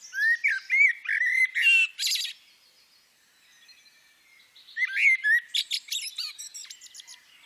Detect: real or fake real